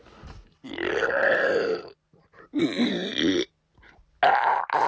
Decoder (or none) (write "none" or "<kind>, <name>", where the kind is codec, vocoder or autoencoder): none